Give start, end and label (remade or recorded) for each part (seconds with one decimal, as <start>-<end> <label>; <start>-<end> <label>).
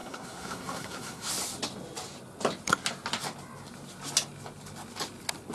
0.0-1.3 remade; 1.3-5.5 recorded